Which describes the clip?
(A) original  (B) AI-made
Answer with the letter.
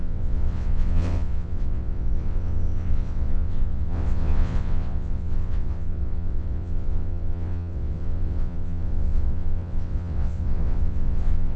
B